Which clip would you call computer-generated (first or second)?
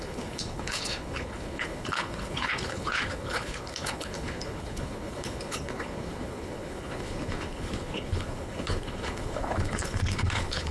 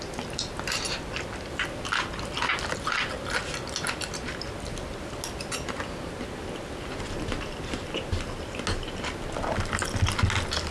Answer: first